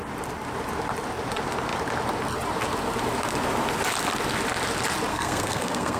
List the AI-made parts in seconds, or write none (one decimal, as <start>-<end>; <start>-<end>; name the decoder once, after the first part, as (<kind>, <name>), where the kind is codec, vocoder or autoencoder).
5.1-6.0 (codec, SNAC)